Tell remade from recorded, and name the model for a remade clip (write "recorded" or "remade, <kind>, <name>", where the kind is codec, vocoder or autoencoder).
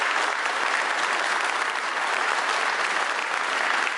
recorded